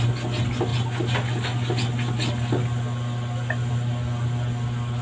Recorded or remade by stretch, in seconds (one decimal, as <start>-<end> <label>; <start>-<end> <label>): 0.0-5.0 recorded